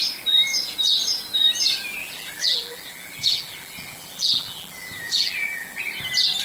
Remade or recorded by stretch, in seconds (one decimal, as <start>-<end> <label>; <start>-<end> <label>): 0.0-2.0 recorded; 2.0-5.8 remade; 5.8-6.4 recorded